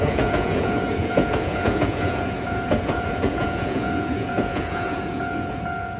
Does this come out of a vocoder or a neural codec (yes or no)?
yes